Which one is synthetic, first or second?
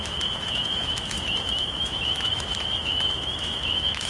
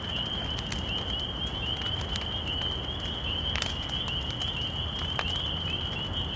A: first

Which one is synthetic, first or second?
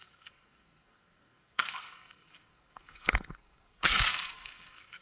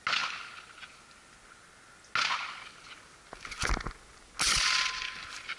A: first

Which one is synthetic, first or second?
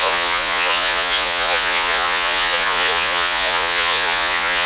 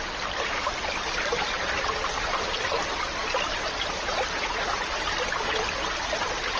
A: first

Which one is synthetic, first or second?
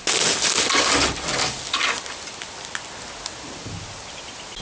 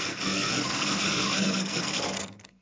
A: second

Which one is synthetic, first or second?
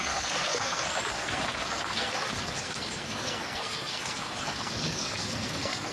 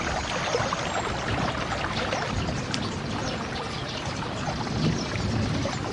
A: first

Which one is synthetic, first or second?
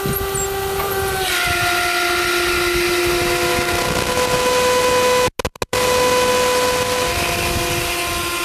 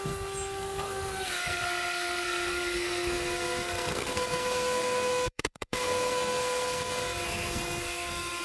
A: second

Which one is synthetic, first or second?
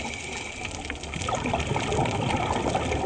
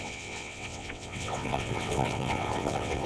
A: second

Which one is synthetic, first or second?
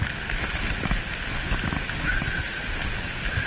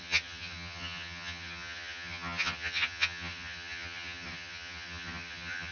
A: second